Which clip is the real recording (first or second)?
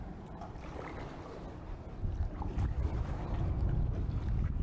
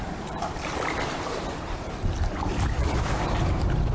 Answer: first